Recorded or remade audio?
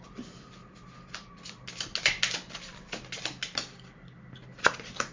recorded